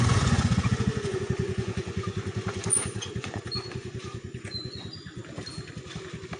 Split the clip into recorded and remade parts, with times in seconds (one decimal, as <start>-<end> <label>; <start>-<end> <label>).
0.0-5.2 remade; 5.2-6.4 recorded